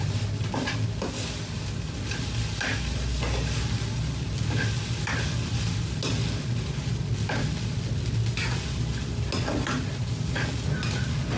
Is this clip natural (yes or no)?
yes